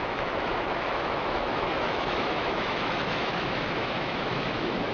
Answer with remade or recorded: remade